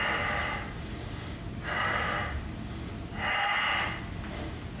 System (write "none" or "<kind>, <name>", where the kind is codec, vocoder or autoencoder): none